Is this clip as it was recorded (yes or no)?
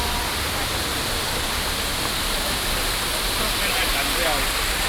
yes